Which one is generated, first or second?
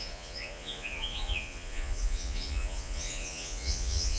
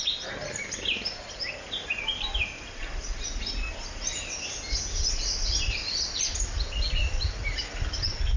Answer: first